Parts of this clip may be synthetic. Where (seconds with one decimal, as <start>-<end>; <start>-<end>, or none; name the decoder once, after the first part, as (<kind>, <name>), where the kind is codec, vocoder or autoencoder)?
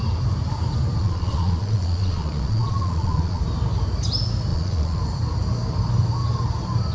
1.0-3.4 (vocoder, Vocos); 4.5-5.0